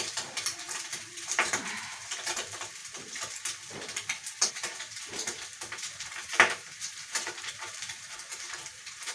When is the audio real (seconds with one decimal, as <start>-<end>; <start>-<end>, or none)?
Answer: 2.8-4.5